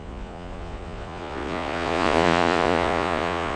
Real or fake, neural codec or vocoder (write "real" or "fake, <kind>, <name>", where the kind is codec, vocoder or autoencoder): fake, vocoder, Vocos